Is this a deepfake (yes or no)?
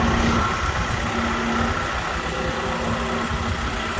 no